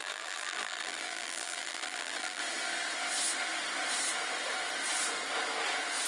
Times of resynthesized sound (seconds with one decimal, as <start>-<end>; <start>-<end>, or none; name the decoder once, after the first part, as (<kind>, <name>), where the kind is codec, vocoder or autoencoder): 0.0-2.4 (vocoder, BigVGAN v2)